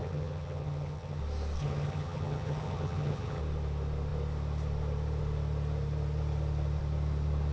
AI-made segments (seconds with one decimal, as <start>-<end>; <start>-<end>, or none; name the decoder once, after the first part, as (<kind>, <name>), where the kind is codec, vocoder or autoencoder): 0.0-1.2 (vocoder, HiFi-GAN); 1.6-3.4